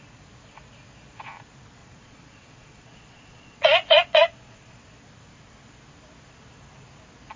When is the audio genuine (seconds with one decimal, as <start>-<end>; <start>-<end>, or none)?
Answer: 0.0-1.8; 4.7-7.4